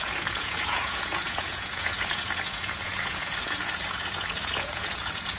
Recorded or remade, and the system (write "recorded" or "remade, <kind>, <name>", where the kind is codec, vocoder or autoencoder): remade, vocoder, Vocos